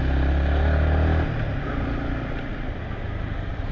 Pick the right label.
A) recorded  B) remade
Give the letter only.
A